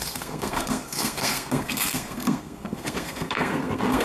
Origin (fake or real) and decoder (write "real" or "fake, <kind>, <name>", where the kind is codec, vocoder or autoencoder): fake, codec, SNAC